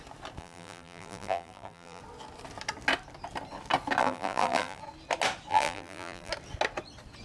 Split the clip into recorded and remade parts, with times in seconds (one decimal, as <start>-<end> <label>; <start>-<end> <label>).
0.0-0.4 recorded; 0.4-2.0 remade; 2.0-4.0 recorded; 4.0-4.8 remade; 4.8-5.5 recorded; 5.5-6.3 remade; 6.3-7.2 recorded